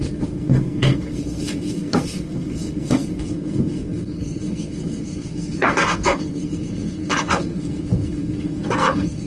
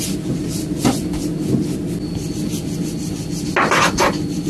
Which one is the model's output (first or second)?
first